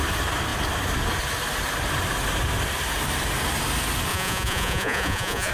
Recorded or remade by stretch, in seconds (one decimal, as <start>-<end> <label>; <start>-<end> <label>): 0.0-4.1 recorded; 4.1-5.5 remade